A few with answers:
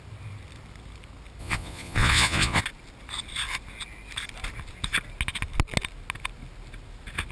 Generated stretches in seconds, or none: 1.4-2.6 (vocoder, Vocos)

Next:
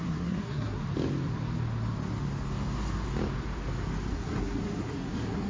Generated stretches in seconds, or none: 0.0-0.8 (codec, SNAC); 4.1-5.5

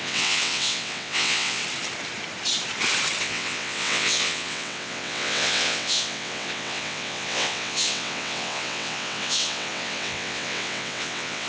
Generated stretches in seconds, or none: 0.0-1.6 (vocoder, WaveNeXt); 3.2-11.5

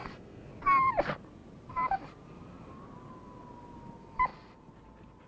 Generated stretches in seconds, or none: 0.0-0.5 (codec, SNAC)

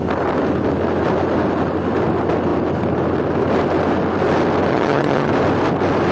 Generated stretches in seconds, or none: 4.7-5.3 (vocoder, HiFi-GAN)

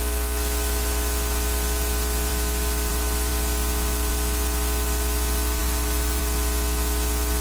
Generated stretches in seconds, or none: 5.6-6.2 (codec, DAC)

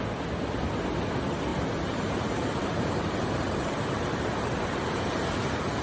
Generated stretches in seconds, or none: 1.5-5.0 (vocoder, BigVGAN v2)

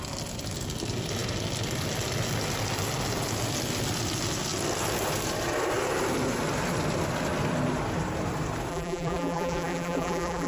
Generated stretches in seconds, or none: 8.7-10.5 (vocoder, BigVGAN v2)